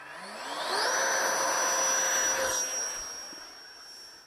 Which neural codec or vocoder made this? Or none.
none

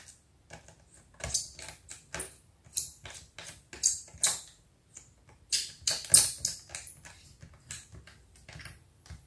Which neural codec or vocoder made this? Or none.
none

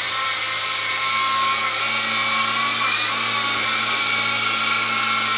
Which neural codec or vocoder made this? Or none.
none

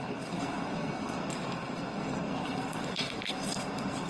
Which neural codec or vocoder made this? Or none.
codec, SNAC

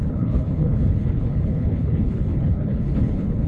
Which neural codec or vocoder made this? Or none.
codec, HILCodec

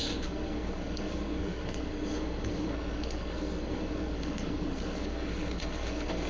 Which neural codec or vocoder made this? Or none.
codec, SNAC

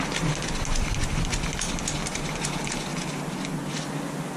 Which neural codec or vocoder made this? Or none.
none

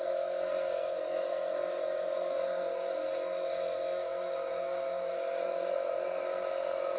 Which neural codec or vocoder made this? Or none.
codec, SNAC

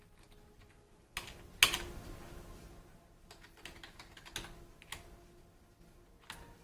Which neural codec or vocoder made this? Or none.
none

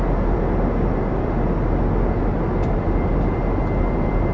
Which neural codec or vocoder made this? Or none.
none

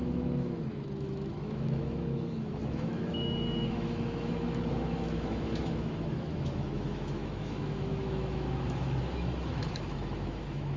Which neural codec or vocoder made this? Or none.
autoencoder, DAC-VAE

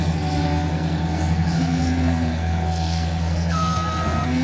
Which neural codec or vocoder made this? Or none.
codec, SNAC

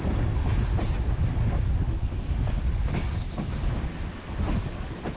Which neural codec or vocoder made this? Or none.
none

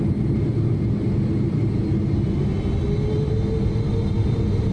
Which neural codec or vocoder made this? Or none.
none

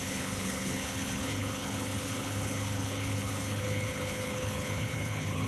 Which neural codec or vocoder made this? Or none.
codec, HILCodec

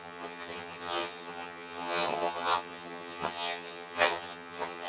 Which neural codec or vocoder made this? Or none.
vocoder, HiFi-GAN